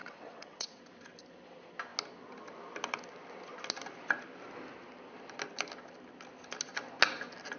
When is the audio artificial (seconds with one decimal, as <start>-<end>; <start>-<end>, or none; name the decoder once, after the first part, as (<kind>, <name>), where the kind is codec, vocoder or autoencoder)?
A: 0.0-0.8 (vocoder, WaveNeXt)